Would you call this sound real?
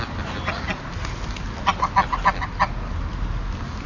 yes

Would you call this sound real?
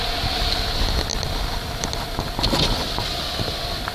yes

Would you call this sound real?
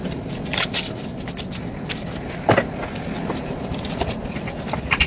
yes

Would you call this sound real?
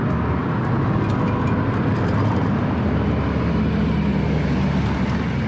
yes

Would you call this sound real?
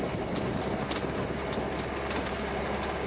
yes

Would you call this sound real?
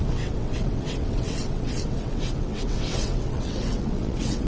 no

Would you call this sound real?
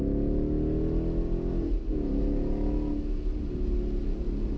yes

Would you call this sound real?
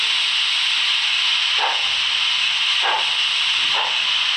yes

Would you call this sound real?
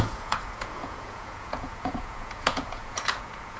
no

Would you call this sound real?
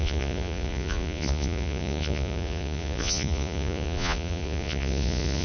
no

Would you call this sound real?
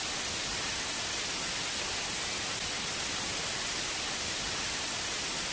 yes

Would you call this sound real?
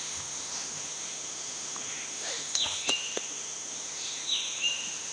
no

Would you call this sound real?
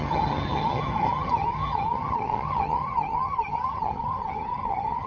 no